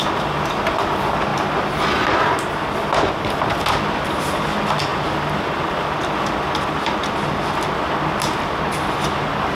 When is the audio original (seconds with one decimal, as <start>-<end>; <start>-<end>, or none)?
0.0-9.5